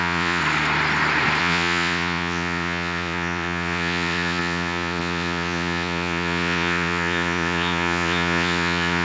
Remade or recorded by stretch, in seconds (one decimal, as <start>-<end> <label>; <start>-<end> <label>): 0.0-0.4 remade; 0.4-1.4 recorded; 1.4-9.0 remade